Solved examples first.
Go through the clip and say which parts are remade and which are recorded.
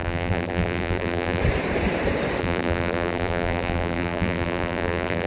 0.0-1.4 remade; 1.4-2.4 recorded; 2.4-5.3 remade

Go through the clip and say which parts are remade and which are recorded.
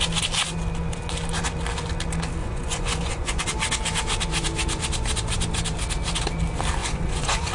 0.0-2.4 recorded; 2.4-3.4 remade; 3.4-6.8 recorded; 6.8-7.5 remade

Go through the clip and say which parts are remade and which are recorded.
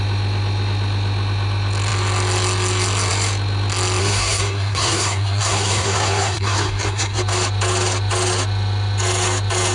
0.0-4.0 recorded; 4.0-7.2 remade; 7.2-9.7 recorded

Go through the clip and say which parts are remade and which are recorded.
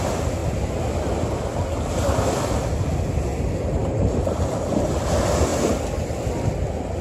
0.0-7.0 recorded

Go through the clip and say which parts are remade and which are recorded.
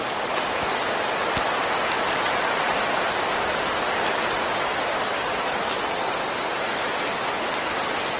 0.0-8.2 recorded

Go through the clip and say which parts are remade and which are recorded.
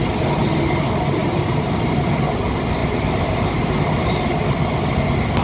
0.0-1.2 recorded; 1.2-2.4 remade; 2.4-2.8 recorded; 2.8-4.1 remade; 4.1-5.4 recorded